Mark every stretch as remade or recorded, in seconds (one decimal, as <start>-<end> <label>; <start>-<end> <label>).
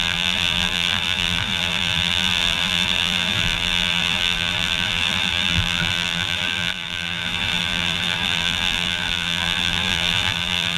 0.0-10.8 remade